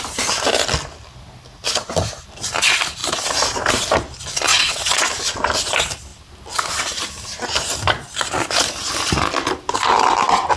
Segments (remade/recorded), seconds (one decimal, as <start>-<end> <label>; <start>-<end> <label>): 0.0-4.5 recorded; 4.5-5.0 remade; 5.0-10.6 recorded

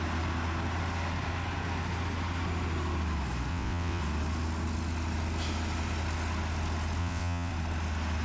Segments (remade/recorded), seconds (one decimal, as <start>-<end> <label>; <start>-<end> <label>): 0.0-3.5 recorded; 3.5-4.0 remade; 4.0-7.0 recorded; 7.0-7.5 remade; 7.5-8.2 recorded

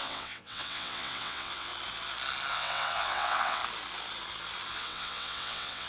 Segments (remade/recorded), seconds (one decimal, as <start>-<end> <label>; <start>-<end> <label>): 0.0-1.7 remade; 1.7-2.5 recorded; 2.5-3.6 remade; 3.6-4.7 recorded; 4.7-5.9 remade

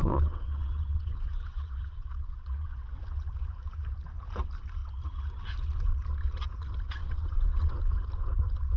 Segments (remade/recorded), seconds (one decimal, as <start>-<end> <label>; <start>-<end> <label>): 0.0-3.0 remade; 3.0-7.0 recorded; 7.0-7.8 remade; 7.8-8.8 recorded

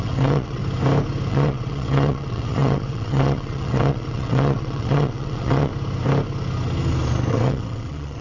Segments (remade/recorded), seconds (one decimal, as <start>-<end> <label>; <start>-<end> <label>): 0.0-0.6 remade; 0.6-1.3 recorded; 1.3-5.7 remade; 5.7-7.3 recorded; 7.3-8.2 remade

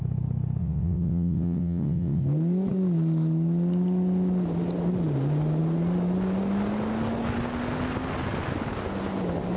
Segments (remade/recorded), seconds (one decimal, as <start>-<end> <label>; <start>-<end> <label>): 0.0-0.6 recorded; 0.6-2.2 remade; 2.2-9.6 recorded